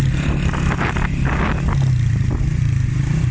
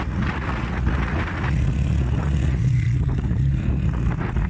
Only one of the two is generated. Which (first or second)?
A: second